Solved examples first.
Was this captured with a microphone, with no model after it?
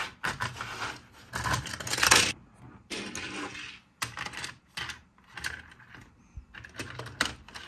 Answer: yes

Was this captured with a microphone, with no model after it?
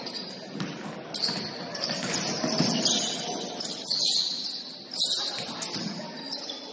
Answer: yes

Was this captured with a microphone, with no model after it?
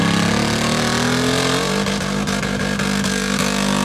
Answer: yes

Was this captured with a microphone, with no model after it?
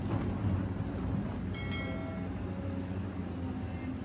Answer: yes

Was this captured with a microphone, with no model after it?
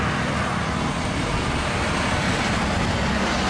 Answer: yes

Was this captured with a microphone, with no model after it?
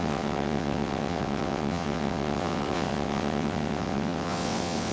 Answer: no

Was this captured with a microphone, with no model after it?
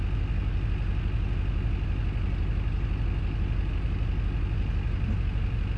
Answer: yes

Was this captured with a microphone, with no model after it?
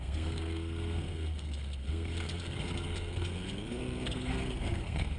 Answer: no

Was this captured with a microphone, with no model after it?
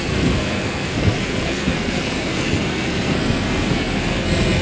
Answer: no